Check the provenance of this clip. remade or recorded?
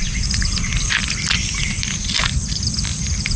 recorded